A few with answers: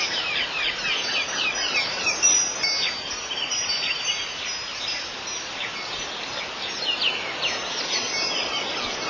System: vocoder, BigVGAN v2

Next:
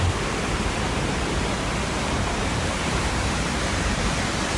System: vocoder, BigVGAN v2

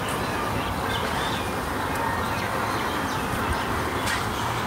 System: none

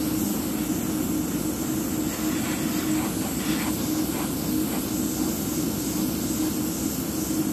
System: none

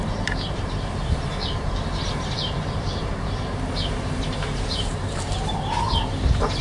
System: vocoder, BigVGAN v2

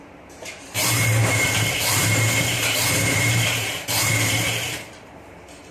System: vocoder, BigVGAN v2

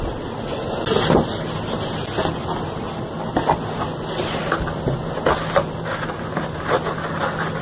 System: none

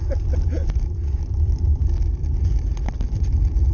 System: vocoder, BigVGAN v2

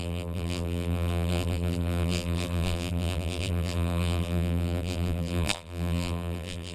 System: vocoder, BigVGAN v2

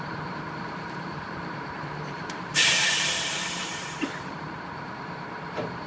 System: vocoder, BigVGAN v2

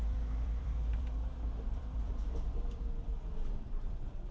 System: vocoder, BigVGAN v2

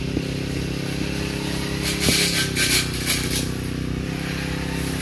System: none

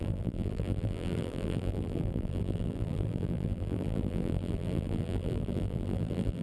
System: vocoder, BigVGAN v2